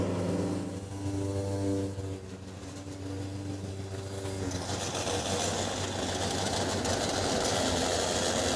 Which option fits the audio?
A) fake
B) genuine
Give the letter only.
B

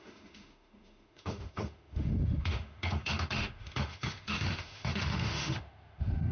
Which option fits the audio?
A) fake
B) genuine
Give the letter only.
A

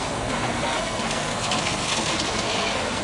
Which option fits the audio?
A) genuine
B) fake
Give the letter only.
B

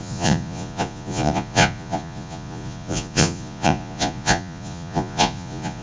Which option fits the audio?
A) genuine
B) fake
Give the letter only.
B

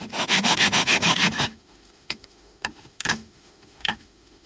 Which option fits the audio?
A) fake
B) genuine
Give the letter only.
A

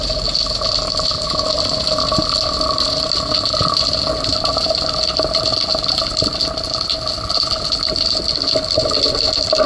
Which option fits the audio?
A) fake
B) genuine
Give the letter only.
B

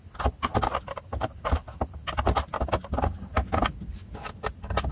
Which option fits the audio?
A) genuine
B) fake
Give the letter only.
A